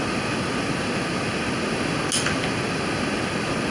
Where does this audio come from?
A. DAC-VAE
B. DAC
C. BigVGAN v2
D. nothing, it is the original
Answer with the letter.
D